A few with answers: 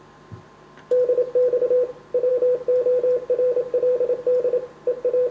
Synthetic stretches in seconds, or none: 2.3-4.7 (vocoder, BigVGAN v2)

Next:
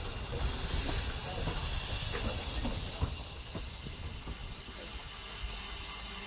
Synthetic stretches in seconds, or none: 4.4-5.4 (vocoder, BigVGAN v2)